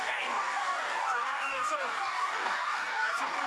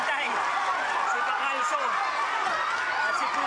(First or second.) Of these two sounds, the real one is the second